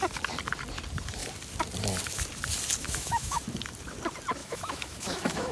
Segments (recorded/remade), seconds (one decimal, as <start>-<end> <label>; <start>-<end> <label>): 0.0-2.8 recorded; 2.8-3.4 remade; 3.4-4.4 recorded; 4.4-5.5 remade